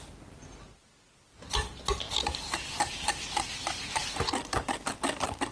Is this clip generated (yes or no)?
no